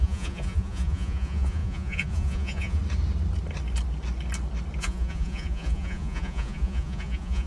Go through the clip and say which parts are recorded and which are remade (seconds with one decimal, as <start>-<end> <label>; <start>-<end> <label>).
0.0-2.8 remade; 2.8-4.8 recorded; 4.8-7.5 remade